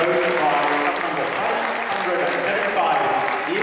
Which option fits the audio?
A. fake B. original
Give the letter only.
B